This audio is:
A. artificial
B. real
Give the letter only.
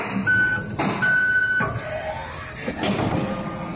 B